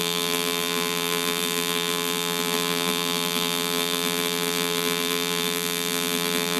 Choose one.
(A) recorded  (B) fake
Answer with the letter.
B